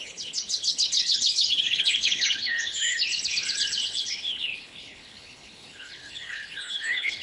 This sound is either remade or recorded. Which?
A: remade